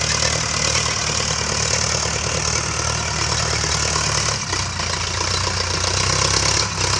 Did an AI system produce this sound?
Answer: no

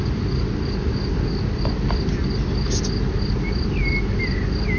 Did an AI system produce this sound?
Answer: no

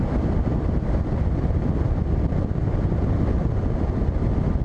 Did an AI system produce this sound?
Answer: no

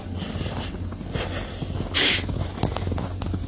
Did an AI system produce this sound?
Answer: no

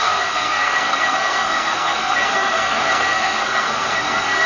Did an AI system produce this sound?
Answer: yes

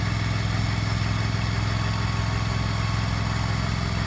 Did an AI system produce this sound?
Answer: no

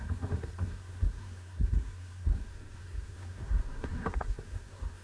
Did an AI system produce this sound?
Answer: yes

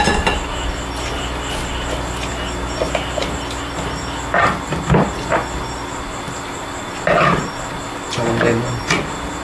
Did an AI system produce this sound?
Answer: no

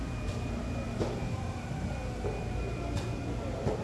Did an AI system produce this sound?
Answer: no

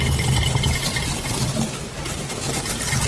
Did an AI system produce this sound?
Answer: no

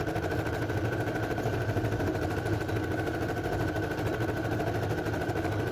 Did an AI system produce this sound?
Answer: no